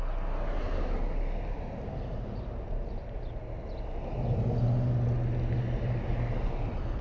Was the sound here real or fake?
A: real